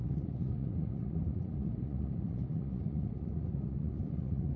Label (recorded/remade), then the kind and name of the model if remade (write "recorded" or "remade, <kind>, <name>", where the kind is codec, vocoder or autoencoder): remade, vocoder, Vocos